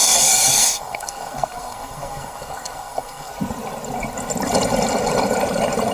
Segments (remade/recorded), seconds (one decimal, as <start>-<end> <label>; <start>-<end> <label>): 0.0-3.3 remade; 3.3-5.9 recorded